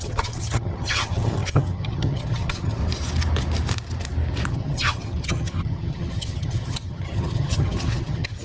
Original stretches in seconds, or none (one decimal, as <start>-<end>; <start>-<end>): 2.8-4.5